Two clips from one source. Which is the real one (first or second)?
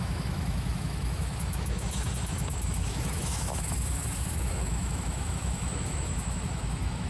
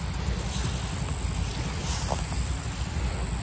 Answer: second